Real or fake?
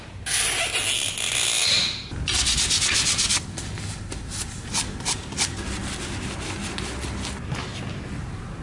real